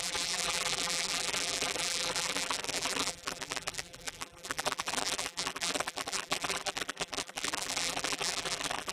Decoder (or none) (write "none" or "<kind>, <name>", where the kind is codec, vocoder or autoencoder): vocoder, BigVGAN v2